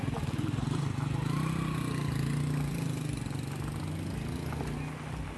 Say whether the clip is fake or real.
real